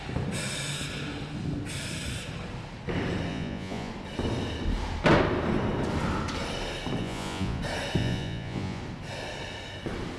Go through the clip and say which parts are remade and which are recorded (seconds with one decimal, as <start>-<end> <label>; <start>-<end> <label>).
0.0-3.3 recorded; 3.3-3.9 remade; 3.9-7.0 recorded; 7.0-7.6 remade; 7.6-8.0 recorded; 8.0-8.8 remade; 8.8-10.2 recorded